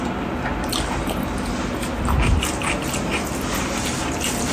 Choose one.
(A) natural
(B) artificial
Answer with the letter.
A